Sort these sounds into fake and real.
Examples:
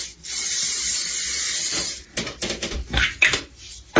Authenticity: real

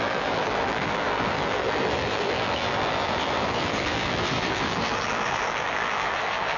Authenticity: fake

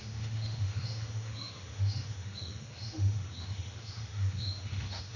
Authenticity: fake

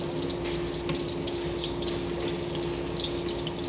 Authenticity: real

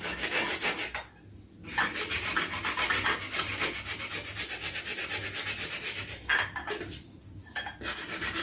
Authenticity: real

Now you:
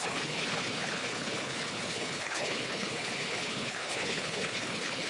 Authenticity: fake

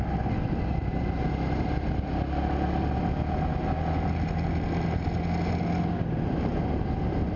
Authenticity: real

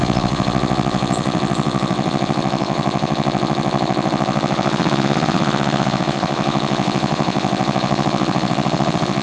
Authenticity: fake